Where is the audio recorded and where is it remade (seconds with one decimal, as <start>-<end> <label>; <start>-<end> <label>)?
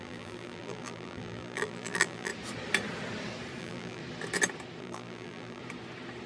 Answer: 0.0-2.3 remade; 2.3-3.6 recorded; 3.6-4.0 remade; 4.0-4.8 recorded; 4.8-5.6 remade; 5.6-6.3 recorded